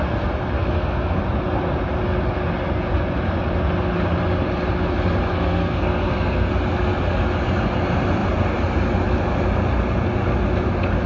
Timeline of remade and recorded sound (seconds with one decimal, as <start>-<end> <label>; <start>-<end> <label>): 0.0-0.6 recorded; 0.6-1.2 remade; 1.2-5.3 recorded; 5.3-6.5 remade; 6.5-11.1 recorded